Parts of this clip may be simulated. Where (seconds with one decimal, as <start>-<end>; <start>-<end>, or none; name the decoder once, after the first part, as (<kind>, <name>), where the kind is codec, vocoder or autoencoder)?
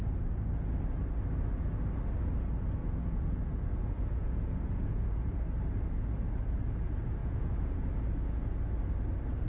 2.8-5.3 (vocoder, Vocos); 7.2-7.9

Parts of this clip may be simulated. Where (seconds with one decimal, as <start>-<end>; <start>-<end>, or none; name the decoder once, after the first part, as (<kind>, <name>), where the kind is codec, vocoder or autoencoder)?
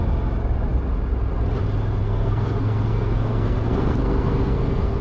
2.0-5.0 (codec, SNAC)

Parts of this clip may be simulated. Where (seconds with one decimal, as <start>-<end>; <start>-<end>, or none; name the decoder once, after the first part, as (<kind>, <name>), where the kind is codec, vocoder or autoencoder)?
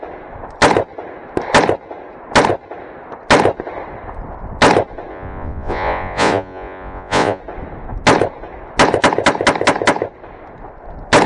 5.1-7.4 (vocoder, Vocos)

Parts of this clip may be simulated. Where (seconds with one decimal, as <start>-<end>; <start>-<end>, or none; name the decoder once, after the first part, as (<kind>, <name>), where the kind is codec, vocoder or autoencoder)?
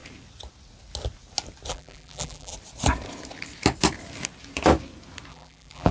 1.7-2.5 (vocoder, BigVGAN v2); 5.3-5.9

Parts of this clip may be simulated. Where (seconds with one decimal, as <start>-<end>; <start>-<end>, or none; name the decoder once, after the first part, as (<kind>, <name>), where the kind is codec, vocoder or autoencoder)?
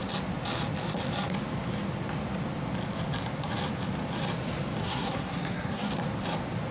4.8-5.9 (codec, SNAC)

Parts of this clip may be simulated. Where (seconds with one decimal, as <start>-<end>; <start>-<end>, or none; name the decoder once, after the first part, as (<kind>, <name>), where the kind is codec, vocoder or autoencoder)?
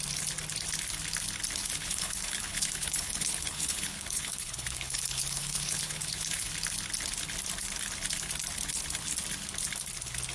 1.6-6.5 (codec, HILCodec)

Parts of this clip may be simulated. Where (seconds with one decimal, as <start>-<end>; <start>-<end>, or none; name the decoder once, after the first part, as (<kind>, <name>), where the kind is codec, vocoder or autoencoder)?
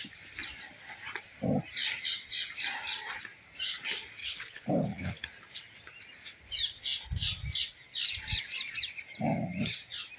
4.2-5.2 (codec, HILCodec)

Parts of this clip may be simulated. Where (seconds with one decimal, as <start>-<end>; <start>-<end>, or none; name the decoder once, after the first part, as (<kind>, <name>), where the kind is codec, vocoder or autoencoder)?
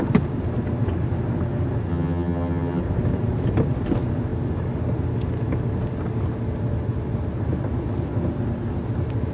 1.9-2.8 (vocoder, HiFi-GAN)